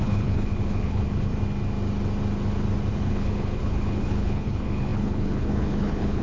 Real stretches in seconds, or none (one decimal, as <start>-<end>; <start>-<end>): 1.3-2.9